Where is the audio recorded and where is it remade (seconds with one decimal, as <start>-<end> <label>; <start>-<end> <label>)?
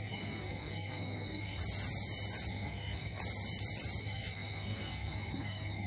0.0-1.6 remade; 1.6-2.5 recorded; 2.5-3.2 remade; 3.2-4.0 recorded; 4.0-5.9 remade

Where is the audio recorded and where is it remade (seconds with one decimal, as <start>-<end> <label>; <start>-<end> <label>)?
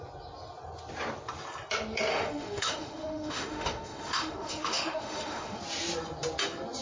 0.0-2.1 recorded; 2.1-5.6 remade; 5.6-6.8 recorded